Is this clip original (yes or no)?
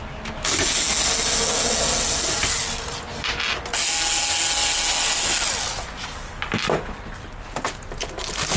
yes